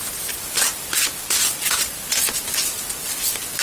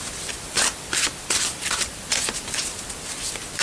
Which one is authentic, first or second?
first